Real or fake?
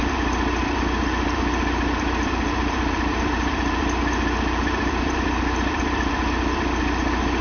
fake